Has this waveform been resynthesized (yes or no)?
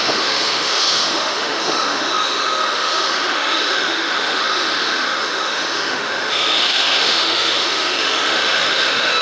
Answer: yes